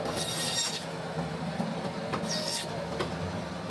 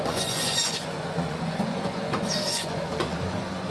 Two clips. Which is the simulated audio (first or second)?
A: second